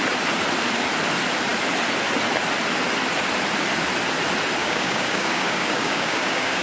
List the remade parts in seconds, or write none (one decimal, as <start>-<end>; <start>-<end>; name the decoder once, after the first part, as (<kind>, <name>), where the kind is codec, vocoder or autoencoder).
4.6-6.6 (codec, DAC)